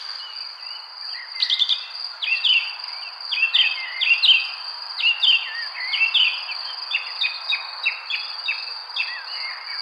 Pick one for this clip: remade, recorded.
recorded